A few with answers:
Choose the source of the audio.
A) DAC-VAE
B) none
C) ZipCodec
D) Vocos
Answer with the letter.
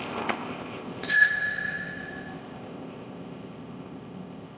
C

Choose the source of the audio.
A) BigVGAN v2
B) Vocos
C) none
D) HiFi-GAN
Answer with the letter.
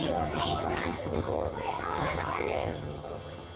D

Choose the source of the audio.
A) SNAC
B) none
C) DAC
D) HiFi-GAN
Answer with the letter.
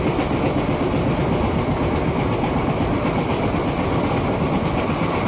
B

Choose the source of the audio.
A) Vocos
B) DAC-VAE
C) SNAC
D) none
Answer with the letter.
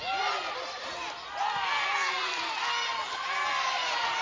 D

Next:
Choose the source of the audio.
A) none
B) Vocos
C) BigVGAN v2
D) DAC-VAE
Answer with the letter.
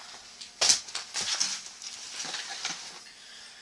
A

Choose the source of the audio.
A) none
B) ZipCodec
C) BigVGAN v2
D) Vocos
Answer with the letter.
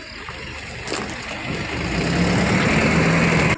A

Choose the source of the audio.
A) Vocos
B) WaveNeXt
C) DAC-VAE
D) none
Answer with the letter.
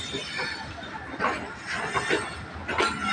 D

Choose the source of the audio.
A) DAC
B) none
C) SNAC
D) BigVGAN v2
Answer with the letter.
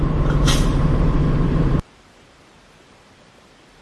D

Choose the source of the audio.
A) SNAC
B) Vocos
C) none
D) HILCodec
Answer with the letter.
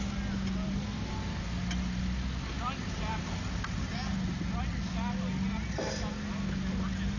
C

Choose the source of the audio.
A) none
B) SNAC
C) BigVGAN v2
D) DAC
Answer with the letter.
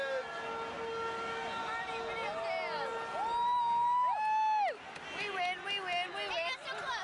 A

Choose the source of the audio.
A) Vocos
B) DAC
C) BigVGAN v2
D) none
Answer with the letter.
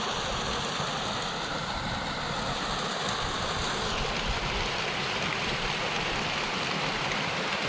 D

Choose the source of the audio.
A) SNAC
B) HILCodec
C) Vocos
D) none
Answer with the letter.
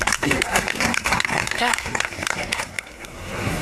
A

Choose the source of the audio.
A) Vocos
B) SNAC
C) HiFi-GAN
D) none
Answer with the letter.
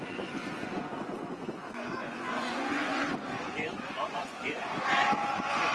A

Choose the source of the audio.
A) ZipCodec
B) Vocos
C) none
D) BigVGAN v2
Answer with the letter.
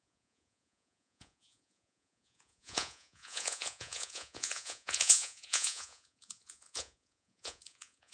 B